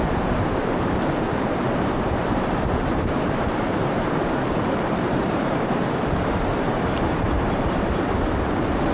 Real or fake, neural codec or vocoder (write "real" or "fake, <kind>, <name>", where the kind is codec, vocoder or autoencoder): fake, vocoder, BigVGAN v2